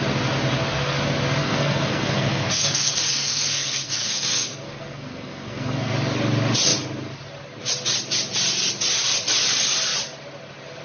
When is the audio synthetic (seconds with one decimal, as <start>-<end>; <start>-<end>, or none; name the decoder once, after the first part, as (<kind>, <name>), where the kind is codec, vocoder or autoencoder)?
1.4-5.9 (codec, SNAC)